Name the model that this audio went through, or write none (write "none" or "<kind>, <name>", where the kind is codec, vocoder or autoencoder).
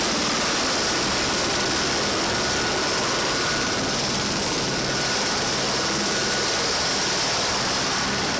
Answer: none